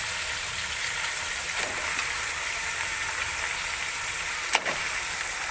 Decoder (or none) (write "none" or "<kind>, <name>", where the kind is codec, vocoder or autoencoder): none